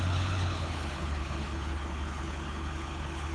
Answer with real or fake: fake